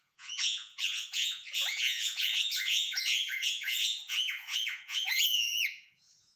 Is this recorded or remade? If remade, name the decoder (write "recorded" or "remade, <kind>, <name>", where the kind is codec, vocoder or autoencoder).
remade, vocoder, Vocos